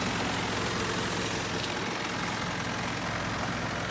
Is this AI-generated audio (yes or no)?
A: no